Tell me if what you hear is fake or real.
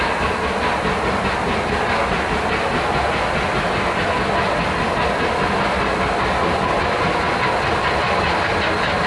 real